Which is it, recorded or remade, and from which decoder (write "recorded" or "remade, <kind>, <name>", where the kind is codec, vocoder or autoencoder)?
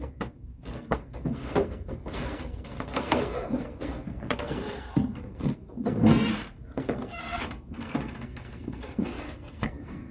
remade, codec, SNAC